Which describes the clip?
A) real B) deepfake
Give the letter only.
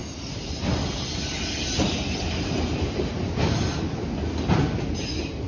A